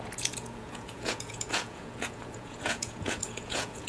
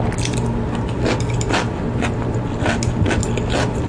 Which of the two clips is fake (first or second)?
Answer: first